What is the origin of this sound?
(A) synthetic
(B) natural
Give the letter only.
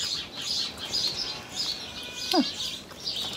B